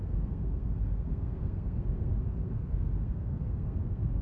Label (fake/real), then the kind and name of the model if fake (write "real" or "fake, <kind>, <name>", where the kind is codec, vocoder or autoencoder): fake, codec, SNAC